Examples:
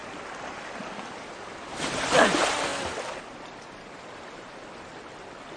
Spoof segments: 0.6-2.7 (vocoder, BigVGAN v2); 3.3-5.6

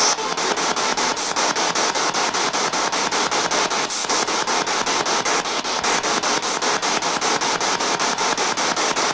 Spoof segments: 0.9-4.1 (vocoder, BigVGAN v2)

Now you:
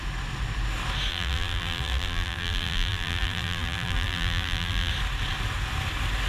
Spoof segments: 1.1-4.9 (vocoder, BigVGAN v2)

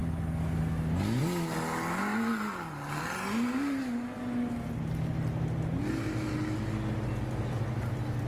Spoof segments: none

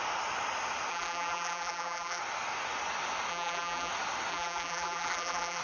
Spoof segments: 0.9-2.2 (vocoder, BigVGAN v2); 3.3-3.9; 4.3-5.6